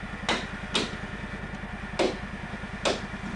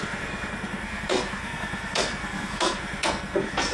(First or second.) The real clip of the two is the first